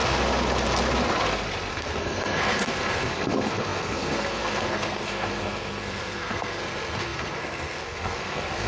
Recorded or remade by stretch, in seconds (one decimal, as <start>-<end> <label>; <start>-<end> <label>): 0.0-1.7 recorded; 1.7-8.7 remade